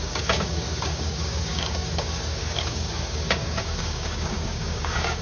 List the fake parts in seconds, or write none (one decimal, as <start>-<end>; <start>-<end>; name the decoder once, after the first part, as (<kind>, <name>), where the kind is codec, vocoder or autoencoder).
0.0-5.2 (codec, DAC)